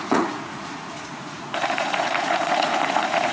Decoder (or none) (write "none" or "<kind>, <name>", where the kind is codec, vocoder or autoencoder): vocoder, Vocos